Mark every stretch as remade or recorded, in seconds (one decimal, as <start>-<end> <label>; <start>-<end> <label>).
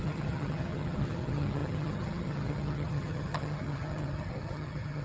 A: 0.0-5.0 remade